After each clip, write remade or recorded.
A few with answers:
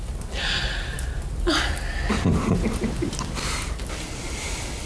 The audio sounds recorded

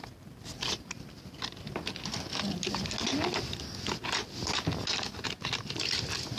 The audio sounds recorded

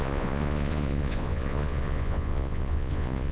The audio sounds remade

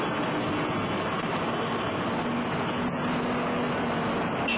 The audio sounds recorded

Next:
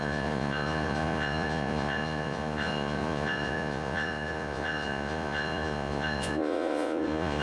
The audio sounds remade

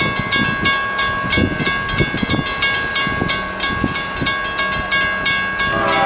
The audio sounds recorded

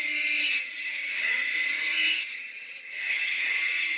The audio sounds remade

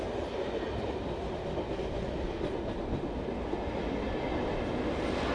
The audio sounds recorded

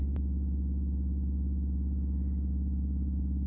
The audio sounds recorded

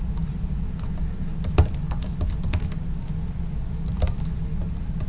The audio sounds recorded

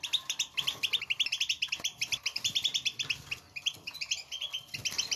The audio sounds remade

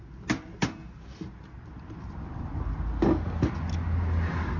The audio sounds recorded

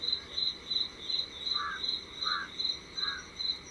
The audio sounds recorded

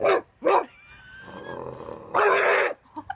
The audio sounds recorded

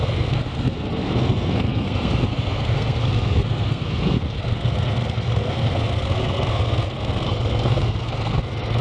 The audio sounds remade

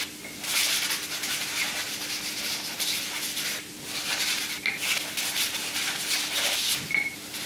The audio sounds recorded